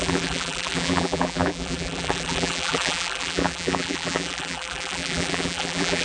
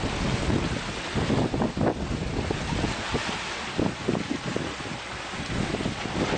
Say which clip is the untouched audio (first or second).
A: second